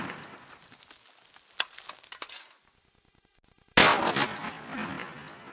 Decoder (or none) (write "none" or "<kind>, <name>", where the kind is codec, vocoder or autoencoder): none